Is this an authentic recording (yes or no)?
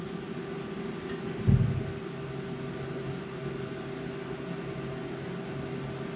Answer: yes